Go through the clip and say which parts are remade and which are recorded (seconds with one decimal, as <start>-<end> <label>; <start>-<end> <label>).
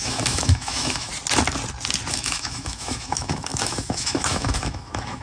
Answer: 0.0-1.1 remade; 1.1-2.1 recorded; 2.1-5.2 remade